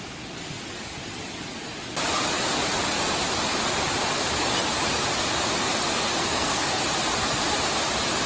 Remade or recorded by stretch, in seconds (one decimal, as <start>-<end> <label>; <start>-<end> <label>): 0.0-6.2 recorded; 6.2-6.8 remade; 6.8-8.3 recorded